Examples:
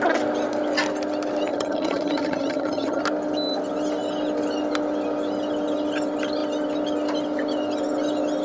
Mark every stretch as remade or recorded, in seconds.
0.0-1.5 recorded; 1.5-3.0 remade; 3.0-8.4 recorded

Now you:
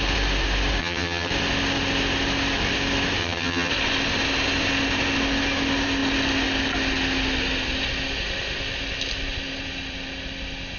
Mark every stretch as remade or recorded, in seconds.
0.0-0.8 recorded; 0.8-1.3 remade; 1.3-3.2 recorded; 3.2-3.7 remade; 3.7-10.8 recorded